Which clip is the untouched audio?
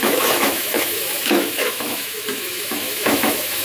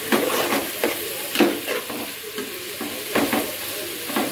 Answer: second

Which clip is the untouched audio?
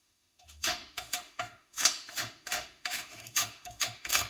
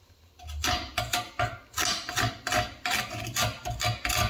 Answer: second